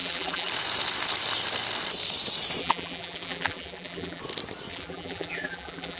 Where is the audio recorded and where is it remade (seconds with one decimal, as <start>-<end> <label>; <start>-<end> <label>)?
0.0-0.5 remade; 0.5-2.6 recorded; 2.6-4.2 remade; 4.2-4.7 recorded; 4.7-6.0 remade